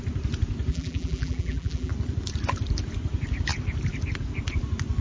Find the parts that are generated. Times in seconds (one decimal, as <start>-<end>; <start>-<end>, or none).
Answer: 0.7-1.9